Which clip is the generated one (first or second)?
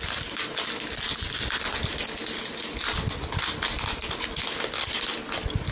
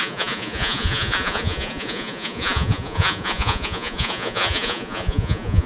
second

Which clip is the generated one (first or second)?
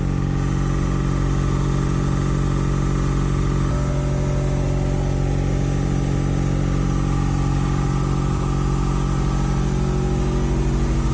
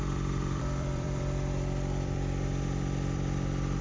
second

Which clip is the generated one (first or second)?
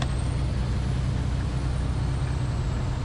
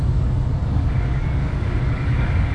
second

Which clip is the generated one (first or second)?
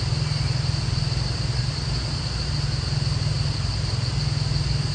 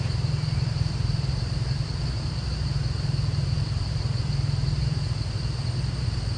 second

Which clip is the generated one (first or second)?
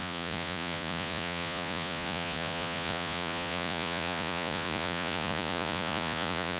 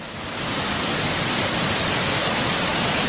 first